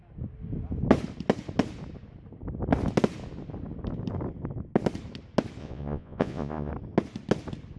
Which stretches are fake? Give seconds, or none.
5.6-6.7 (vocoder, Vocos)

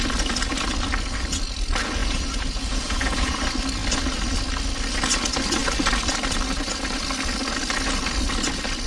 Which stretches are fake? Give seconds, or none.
2.0-3.4 (vocoder, Vocos)

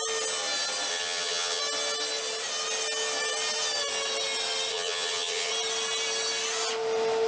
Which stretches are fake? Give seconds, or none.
0.9-1.6 (vocoder, HiFi-GAN); 4.7-5.5

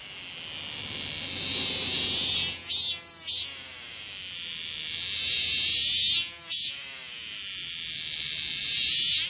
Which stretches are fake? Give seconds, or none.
none

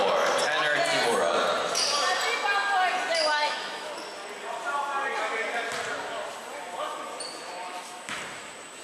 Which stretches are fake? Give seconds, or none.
3.3-3.9 (autoencoder, DAC-VAE); 7.6-8.2

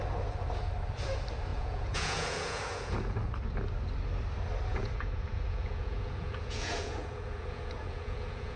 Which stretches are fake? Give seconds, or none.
1.5-3.3 (vocoder, Vocos); 4.7-8.6

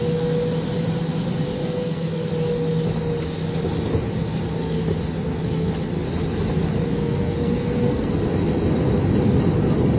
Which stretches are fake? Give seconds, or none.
1.6-2.3 (codec, SNAC); 7.0-8.1

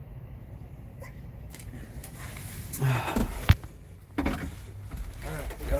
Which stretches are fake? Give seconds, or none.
0.0-0.5 (autoencoder, DAC-VAE); 0.9-1.6; 2.0-2.8